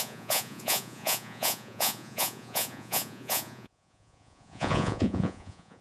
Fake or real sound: fake